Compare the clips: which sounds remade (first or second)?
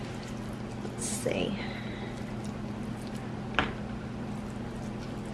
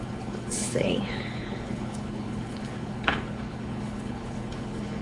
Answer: second